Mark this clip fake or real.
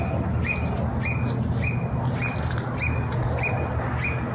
real